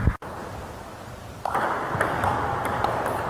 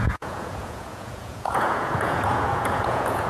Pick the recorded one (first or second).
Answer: first